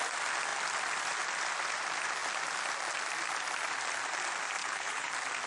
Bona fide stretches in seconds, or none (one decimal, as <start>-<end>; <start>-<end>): 0.0-4.6; 5.1-5.5